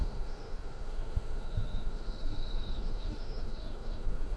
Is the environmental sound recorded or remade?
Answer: remade